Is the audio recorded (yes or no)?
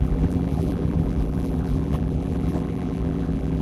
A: no